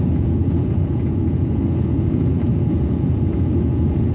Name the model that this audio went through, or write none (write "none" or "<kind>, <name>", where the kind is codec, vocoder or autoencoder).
vocoder, Vocos